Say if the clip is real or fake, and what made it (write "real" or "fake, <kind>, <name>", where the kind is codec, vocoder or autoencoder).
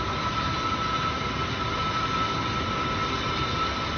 real